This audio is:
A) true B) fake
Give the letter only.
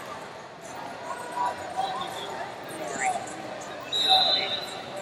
A